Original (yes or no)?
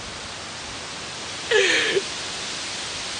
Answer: yes